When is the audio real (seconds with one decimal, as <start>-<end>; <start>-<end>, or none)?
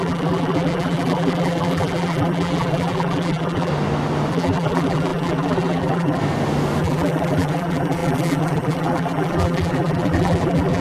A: 3.7-4.3; 6.2-6.8